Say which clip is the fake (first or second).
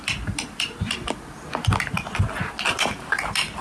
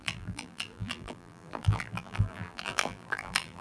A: second